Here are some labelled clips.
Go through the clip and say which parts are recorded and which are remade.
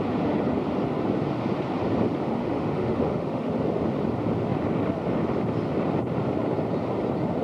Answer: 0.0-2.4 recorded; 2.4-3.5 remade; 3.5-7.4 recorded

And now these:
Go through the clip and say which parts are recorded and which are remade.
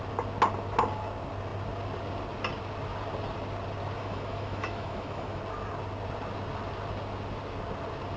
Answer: 0.0-4.0 recorded; 4.0-5.4 remade; 5.4-8.2 recorded